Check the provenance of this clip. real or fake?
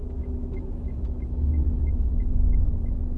fake